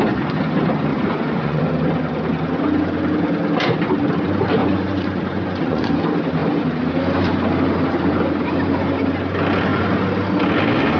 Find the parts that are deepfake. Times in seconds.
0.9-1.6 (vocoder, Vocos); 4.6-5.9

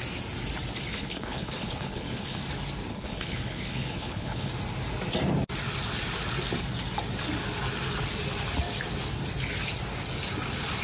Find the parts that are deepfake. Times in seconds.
0.9-2.4 (codec, HILCodec); 2.9-4.5

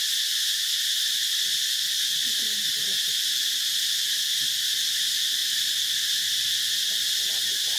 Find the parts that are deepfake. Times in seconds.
none

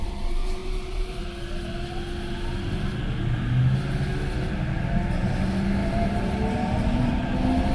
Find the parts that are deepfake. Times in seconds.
5.8-7.1 (vocoder, BigVGAN v2)

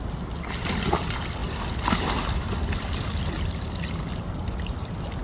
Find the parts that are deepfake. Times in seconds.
none

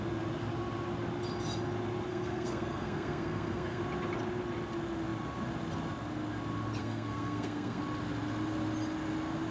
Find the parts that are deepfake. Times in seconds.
2.1-3.8 (codec, SNAC); 6.8-7.8

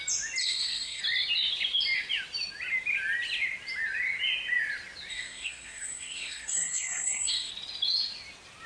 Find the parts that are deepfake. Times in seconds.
0.4-1.0 (codec, SNAC); 5.1-7.5